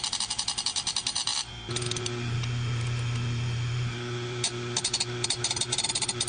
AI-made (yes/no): no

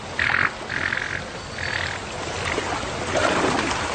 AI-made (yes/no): no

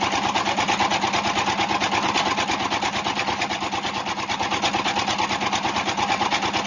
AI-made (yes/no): no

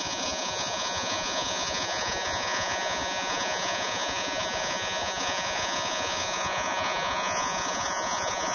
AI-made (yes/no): yes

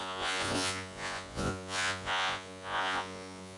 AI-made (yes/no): yes